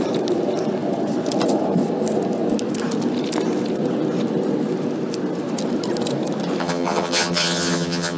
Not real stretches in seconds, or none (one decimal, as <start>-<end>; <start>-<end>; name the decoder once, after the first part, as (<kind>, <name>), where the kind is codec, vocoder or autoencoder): 6.6-8.2 (vocoder, HiFi-GAN)